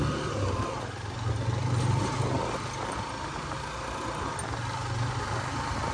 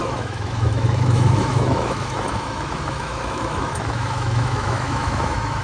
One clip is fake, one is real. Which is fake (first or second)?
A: second